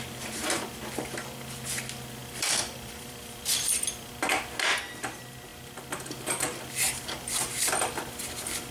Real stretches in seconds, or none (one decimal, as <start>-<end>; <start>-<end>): 0.0-2.2; 4.1-8.7